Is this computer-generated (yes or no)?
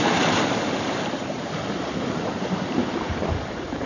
yes